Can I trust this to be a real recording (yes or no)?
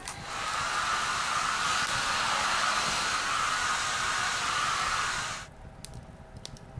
yes